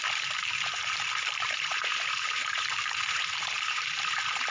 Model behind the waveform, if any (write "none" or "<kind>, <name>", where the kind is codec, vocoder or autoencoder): vocoder, BigVGAN v2